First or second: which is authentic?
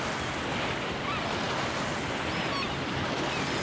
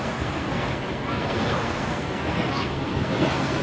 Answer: first